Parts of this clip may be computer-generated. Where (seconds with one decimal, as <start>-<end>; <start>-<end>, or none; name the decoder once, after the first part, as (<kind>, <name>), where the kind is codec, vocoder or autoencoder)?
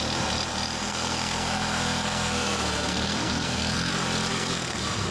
0.8-3.9 (codec, SNAC); 4.3-5.1